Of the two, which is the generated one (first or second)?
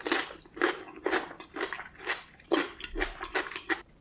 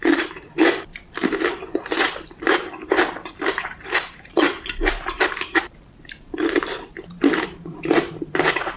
second